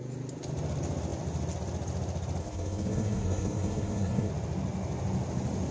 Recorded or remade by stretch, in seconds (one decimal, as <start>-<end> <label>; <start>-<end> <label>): 0.0-2.4 recorded; 2.4-4.3 remade; 4.3-5.7 recorded